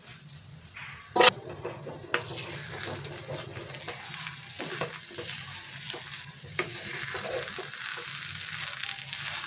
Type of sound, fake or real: real